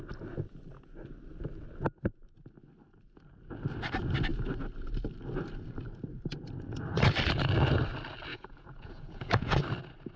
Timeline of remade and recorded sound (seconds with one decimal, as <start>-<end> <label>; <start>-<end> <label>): 0.0-8.3 recorded; 8.3-9.6 remade; 9.6-10.2 recorded